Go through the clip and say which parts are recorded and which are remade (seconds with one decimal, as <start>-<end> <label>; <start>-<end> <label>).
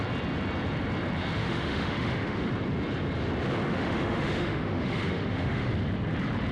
0.0-1.4 recorded; 1.4-2.5 remade; 2.5-3.7 recorded; 3.7-5.7 remade; 5.7-6.5 recorded